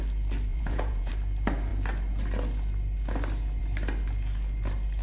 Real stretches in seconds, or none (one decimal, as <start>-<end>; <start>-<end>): 0.0-0.5; 1.1-5.0

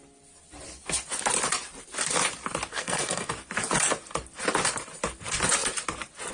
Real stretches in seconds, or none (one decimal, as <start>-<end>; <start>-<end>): 0.0-2.7; 3.3-6.3

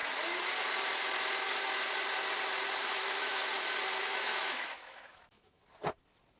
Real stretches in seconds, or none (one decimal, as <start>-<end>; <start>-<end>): 0.0-2.8; 3.4-4.0; 5.6-6.4

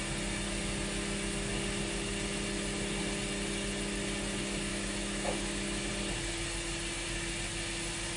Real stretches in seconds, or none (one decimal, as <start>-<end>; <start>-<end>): 0.0-4.7; 5.9-8.2

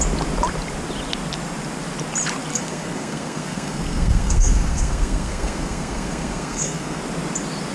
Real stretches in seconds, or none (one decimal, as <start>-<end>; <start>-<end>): 0.0-2.5; 7.0-7.7